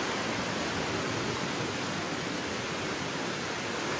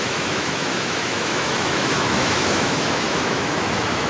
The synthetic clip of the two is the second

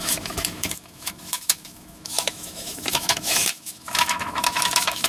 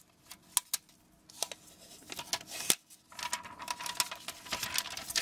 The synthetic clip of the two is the first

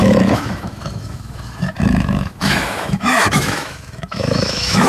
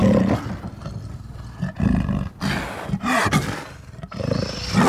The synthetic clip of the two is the first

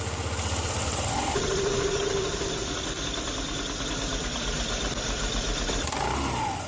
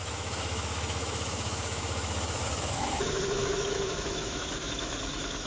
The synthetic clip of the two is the second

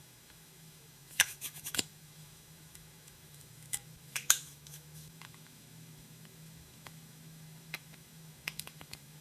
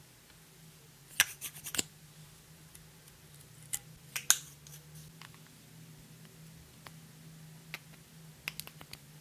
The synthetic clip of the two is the first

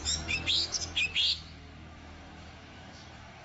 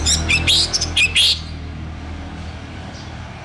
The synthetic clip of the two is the first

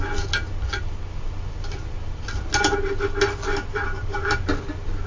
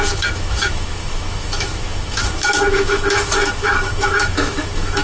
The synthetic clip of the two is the second